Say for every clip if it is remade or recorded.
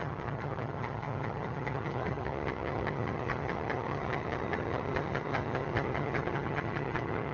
remade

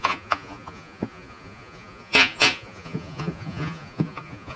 remade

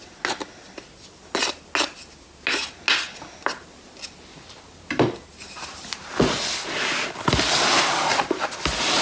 recorded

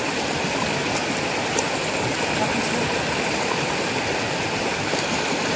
recorded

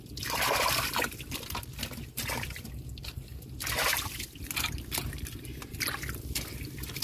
recorded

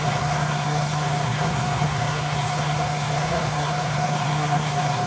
remade